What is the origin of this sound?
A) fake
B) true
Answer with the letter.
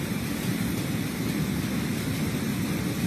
A